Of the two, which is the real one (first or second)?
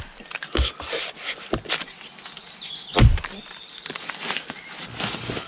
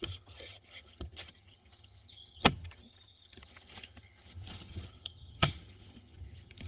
first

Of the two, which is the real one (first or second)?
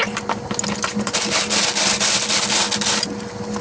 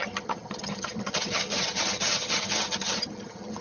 first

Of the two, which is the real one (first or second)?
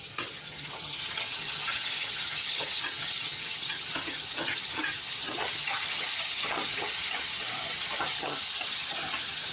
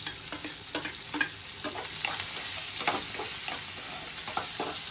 second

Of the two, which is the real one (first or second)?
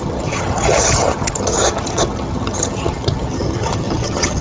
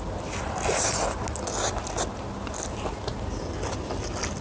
second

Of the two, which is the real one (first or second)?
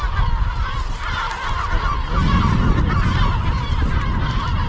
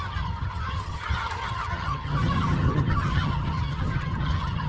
first